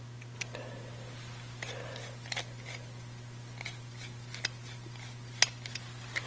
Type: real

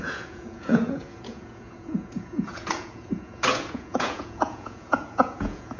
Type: fake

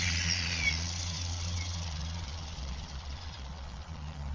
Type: fake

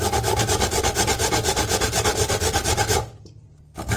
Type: real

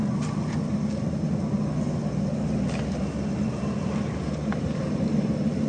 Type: real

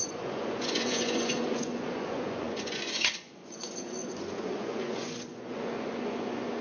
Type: fake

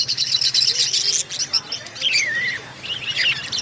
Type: real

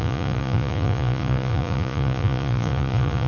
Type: fake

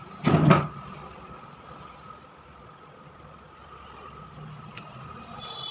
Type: real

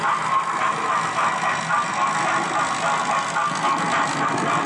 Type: real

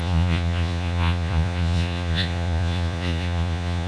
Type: fake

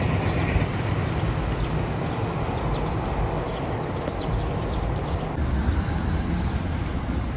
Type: real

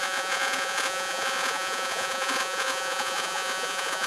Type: fake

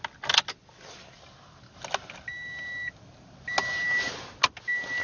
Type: real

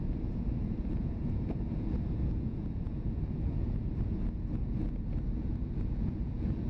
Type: fake